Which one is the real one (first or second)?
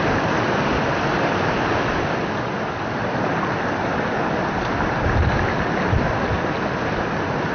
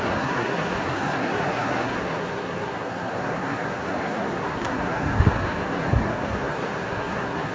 first